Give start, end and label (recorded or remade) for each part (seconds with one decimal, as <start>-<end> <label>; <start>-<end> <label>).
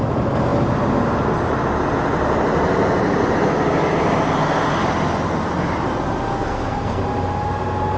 0.0-6.3 recorded; 6.3-7.0 remade; 7.0-8.0 recorded